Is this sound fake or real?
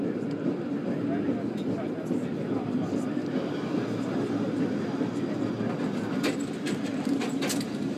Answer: real